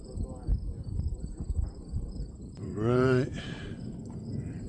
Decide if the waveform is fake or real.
fake